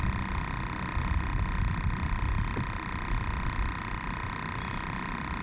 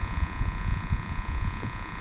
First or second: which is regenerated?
second